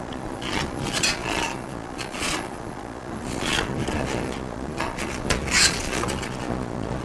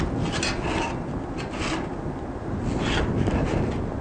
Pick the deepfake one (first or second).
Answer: first